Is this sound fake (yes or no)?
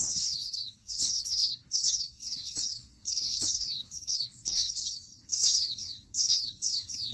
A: yes